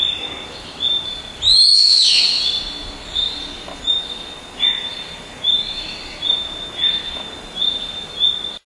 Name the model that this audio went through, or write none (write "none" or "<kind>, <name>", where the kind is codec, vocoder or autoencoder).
none